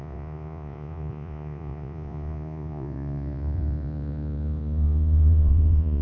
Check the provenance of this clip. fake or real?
fake